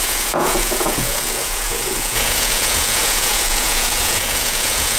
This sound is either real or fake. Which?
fake